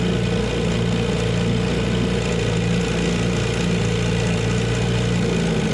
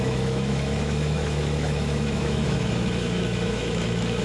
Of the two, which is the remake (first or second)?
second